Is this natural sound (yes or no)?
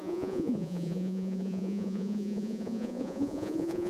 no